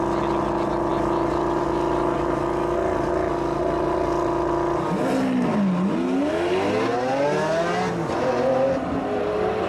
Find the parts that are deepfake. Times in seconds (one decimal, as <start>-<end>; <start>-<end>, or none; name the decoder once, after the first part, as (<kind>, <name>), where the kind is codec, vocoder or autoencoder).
none